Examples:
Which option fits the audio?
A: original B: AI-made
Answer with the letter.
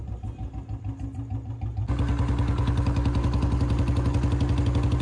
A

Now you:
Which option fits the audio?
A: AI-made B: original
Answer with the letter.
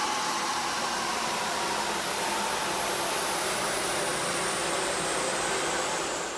B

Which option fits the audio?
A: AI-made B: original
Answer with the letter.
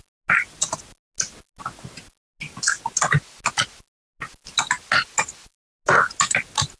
B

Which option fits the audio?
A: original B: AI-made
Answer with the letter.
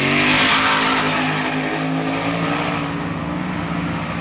A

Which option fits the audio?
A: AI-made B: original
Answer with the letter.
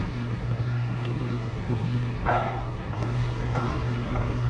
A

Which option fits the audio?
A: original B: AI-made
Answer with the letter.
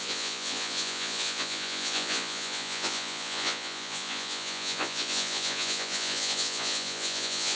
B